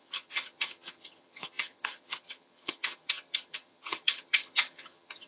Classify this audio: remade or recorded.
remade